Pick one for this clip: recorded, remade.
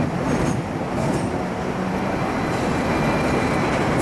recorded